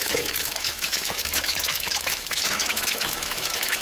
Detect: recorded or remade remade